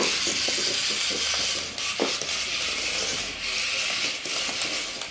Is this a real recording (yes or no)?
yes